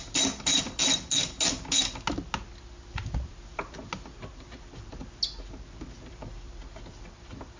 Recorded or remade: recorded